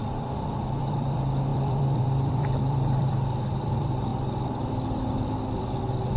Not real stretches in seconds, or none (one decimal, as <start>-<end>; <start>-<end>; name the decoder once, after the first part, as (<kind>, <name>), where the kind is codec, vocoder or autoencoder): 0.0-6.2 (vocoder, BigVGAN v2)